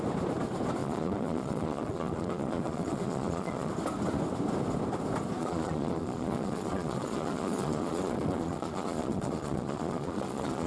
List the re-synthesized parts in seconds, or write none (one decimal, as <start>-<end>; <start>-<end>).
0.8-3.7; 5.4-10.7